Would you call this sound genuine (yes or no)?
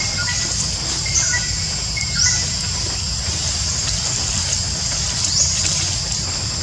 yes